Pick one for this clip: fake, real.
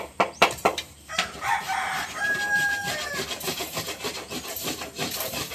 fake